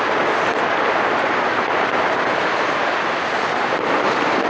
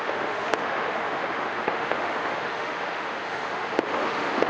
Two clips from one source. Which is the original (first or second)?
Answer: first